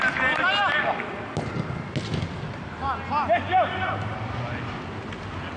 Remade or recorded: recorded